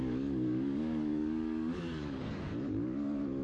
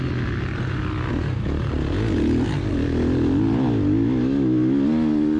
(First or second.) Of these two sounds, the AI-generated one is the first